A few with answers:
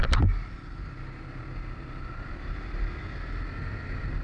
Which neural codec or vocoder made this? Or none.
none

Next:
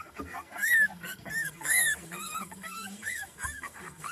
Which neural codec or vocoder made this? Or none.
codec, SNAC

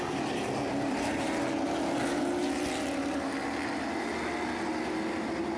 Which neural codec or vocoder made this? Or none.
none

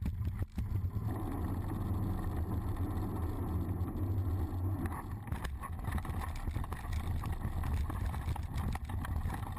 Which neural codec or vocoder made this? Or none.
none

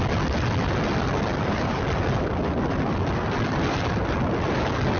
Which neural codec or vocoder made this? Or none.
none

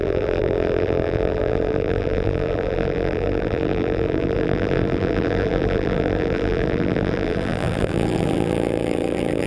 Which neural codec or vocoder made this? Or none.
vocoder, BigVGAN v2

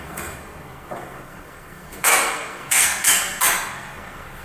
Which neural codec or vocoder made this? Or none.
codec, SNAC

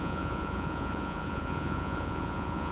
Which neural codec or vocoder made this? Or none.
vocoder, Vocos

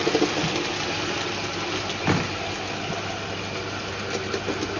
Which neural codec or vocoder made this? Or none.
none